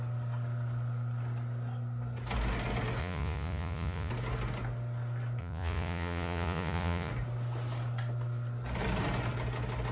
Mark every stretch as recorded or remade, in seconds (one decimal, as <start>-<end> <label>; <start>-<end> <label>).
0.0-3.0 recorded; 3.0-4.1 remade; 4.1-5.4 recorded; 5.4-7.1 remade; 7.1-9.9 recorded